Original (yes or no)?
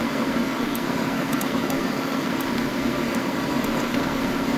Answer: no